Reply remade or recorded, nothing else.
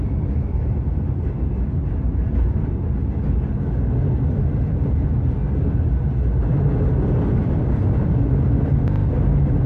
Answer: recorded